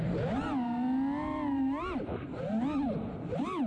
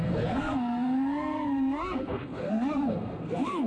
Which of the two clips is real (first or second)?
first